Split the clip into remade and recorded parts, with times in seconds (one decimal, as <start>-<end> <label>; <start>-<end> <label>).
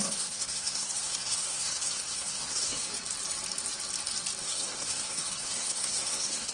0.0-2.9 remade; 2.9-4.4 recorded; 4.4-6.5 remade